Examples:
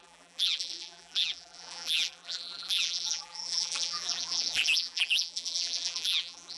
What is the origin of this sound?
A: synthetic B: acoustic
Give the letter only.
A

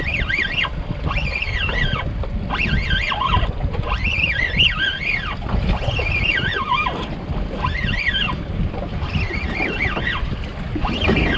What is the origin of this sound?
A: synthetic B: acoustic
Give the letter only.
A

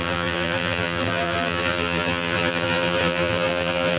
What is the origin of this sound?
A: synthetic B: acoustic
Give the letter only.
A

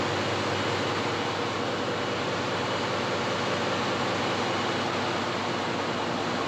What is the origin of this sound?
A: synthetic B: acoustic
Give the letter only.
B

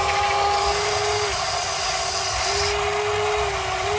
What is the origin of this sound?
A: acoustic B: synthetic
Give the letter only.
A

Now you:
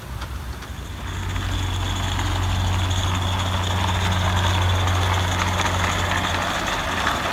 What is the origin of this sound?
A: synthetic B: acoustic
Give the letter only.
B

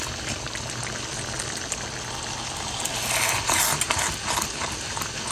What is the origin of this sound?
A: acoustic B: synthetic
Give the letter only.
A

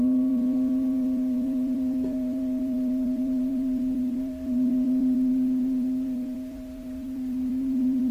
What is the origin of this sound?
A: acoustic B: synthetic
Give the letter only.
B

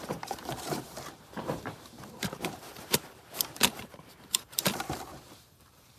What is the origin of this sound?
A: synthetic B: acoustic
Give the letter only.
A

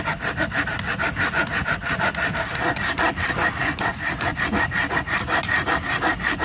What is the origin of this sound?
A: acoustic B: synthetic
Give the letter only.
B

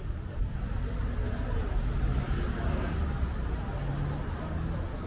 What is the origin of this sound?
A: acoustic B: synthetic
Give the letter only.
A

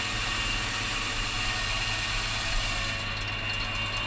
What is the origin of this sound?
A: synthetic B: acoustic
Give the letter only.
B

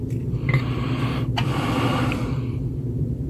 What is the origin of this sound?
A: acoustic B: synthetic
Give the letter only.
B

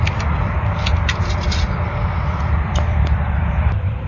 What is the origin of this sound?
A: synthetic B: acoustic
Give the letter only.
A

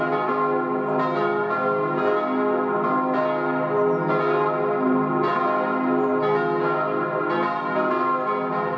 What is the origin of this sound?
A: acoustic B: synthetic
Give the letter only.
A